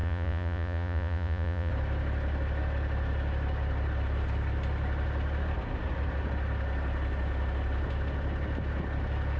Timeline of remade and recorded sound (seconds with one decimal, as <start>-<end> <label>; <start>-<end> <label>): 0.0-1.7 remade; 1.7-9.4 recorded